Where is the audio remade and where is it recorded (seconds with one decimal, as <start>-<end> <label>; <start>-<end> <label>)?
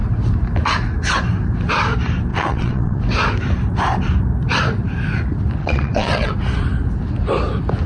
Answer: 0.0-2.3 recorded; 2.3-3.0 remade; 3.0-5.6 recorded; 5.6-6.3 remade; 6.3-7.9 recorded